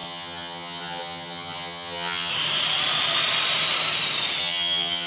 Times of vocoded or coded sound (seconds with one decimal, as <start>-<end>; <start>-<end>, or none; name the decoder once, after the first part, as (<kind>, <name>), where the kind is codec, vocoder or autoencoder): 0.0-2.3 (vocoder, HiFi-GAN); 4.4-5.1